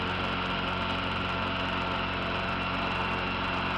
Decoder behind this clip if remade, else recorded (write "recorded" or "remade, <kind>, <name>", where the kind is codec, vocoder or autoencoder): recorded